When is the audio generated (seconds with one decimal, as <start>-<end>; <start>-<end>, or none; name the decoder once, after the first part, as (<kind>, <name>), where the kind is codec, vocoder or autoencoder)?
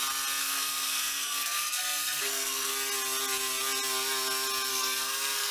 0.4-2.7 (codec, SNAC); 4.7-5.5